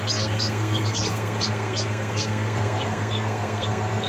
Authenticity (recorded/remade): remade